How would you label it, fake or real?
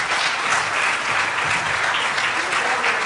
real